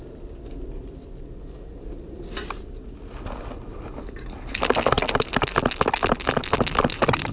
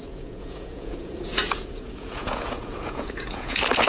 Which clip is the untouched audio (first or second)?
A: first